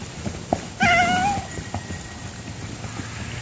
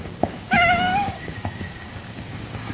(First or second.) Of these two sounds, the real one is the first